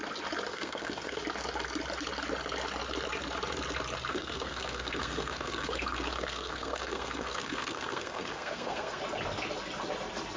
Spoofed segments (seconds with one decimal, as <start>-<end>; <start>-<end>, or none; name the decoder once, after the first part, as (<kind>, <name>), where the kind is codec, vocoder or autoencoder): 0.5-1.2 (codec, SNAC); 4.1-9.0